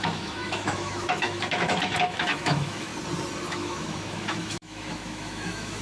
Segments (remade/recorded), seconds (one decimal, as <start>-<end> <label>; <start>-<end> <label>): 0.0-2.9 remade; 2.9-3.5 recorded; 3.5-5.8 remade

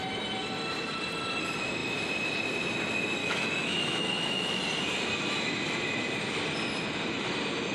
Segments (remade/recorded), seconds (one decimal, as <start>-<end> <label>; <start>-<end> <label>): 0.0-3.2 recorded; 3.2-4.6 remade; 4.6-7.7 recorded

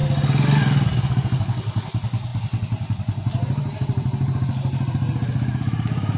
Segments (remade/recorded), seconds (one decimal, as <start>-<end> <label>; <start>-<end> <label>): 0.0-6.2 recorded